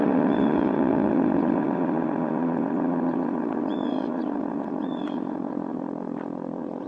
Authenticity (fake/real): fake